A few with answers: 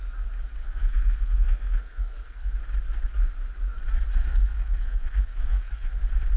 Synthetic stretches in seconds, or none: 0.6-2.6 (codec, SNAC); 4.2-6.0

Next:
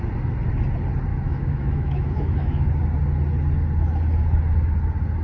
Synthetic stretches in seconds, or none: 1.1-2.7 (autoencoder, DAC-VAE)

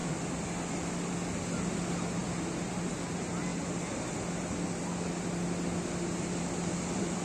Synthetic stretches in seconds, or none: none

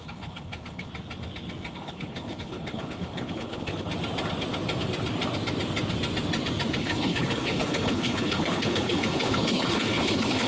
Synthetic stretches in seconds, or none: 0.0-0.9 (codec, HILCodec); 1.7-3.9; 6.8-10.5

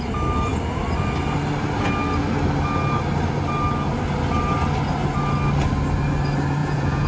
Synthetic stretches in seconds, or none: 6.6-7.1 (vocoder, Vocos)

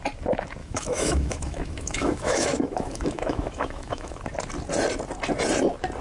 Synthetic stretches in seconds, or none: 0.6-4.2 (autoencoder, DAC-VAE)

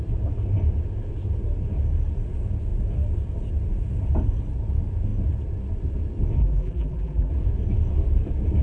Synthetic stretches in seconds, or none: 6.4-7.3 (vocoder, BigVGAN v2)

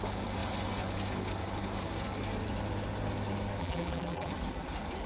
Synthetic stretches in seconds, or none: 3.6-4.3 (vocoder, BigVGAN v2)